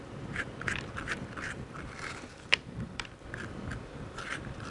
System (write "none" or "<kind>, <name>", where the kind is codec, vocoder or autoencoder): vocoder, BigVGAN v2